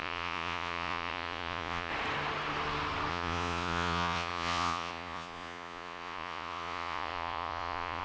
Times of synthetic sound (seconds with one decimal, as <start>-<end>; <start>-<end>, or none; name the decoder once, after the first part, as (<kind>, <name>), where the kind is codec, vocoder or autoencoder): 0.0-1.9 (vocoder, Vocos); 3.1-8.0